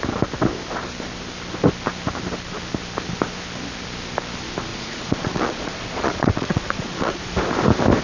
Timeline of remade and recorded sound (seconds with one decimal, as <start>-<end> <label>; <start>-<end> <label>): 0.0-4.7 recorded; 4.7-7.3 remade; 7.3-8.0 recorded